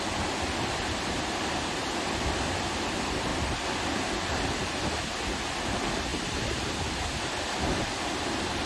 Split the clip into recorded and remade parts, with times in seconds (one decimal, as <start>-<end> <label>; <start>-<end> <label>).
0.0-3.3 recorded; 3.3-4.7 remade; 4.7-8.7 recorded